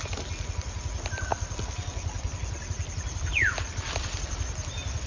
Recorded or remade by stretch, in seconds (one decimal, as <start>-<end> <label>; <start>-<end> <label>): 0.0-5.1 recorded